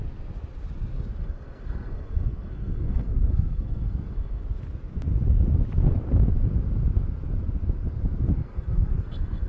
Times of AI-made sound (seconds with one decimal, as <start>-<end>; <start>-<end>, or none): 0.9-4.4; 8.4-9.5